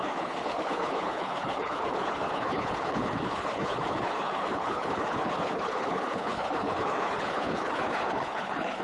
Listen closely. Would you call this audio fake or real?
fake